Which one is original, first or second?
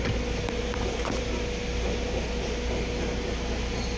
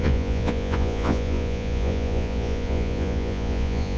first